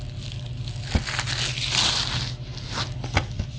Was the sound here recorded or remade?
recorded